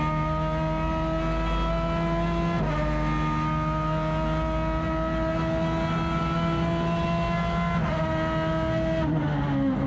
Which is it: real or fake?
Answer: real